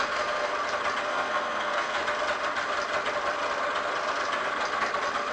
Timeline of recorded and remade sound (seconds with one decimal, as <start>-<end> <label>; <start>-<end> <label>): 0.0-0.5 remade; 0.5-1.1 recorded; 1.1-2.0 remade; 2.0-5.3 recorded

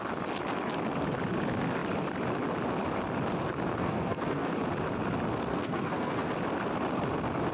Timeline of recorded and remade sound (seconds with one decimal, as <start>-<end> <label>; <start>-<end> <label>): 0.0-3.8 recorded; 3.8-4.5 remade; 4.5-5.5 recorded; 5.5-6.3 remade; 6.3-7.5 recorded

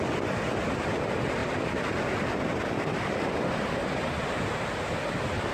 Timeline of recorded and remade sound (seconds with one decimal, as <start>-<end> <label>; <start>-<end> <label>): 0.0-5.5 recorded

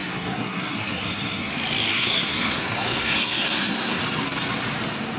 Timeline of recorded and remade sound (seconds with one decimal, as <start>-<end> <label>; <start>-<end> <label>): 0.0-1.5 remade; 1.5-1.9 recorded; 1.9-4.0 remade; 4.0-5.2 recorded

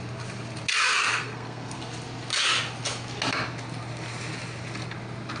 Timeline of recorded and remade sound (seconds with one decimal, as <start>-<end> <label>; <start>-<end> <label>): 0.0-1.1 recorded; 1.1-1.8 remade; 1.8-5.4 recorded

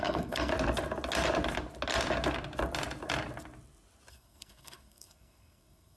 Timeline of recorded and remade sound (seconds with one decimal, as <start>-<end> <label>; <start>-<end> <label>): 0.0-0.5 remade; 0.5-4.1 recorded; 4.1-6.0 remade

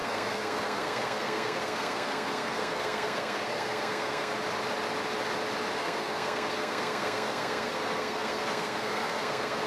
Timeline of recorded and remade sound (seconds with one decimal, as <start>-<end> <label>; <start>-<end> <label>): 0.0-4.3 remade; 4.3-5.7 recorded; 5.7-9.7 remade